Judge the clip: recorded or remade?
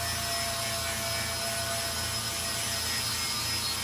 recorded